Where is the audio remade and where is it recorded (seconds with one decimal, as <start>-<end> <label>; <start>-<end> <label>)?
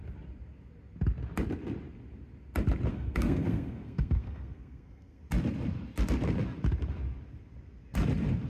0.0-2.9 recorded; 2.9-5.2 remade; 5.2-8.5 recorded